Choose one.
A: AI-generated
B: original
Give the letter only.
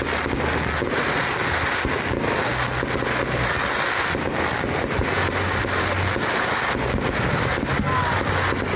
B